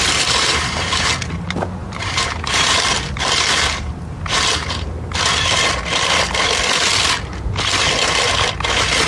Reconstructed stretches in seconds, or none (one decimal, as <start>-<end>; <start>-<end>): 0.0-1.1; 1.8-4.9